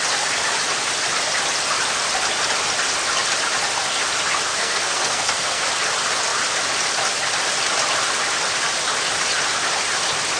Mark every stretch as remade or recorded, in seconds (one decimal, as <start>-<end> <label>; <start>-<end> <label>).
0.0-4.5 recorded; 4.5-5.7 remade; 5.7-10.4 recorded